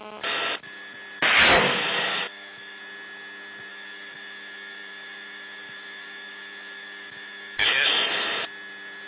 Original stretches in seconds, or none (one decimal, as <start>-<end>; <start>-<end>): 0.0-2.1; 2.8-3.7; 7.9-9.1